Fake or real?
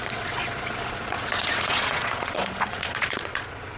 fake